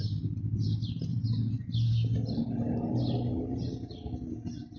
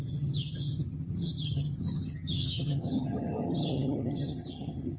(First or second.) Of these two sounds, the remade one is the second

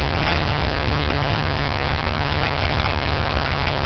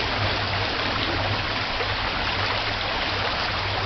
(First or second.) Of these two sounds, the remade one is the first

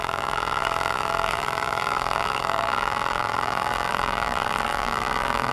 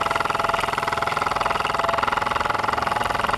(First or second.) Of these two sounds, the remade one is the first